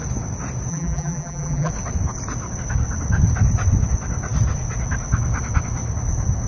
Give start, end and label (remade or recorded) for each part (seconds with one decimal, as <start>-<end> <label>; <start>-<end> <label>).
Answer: 0.0-0.7 recorded; 0.7-1.7 remade; 1.7-6.5 recorded